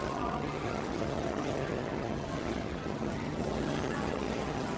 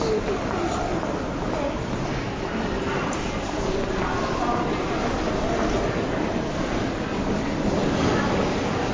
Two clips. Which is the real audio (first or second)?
second